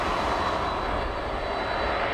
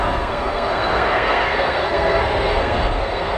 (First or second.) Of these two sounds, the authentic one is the first